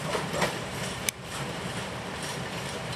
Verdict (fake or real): fake